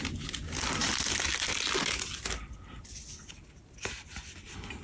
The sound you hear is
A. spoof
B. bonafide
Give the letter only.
B